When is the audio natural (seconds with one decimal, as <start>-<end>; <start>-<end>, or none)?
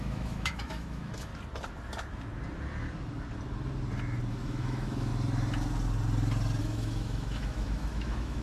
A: 1.3-4.3; 5.1-6.6